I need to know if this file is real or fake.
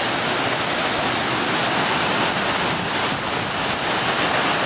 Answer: real